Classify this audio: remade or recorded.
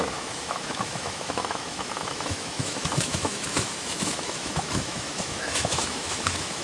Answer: remade